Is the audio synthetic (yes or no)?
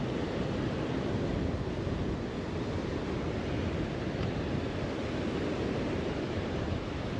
no